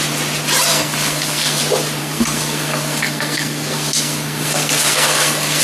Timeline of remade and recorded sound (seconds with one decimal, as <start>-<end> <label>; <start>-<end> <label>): 0.0-0.7 recorded; 0.7-1.6 remade; 1.6-2.0 recorded; 2.0-5.6 remade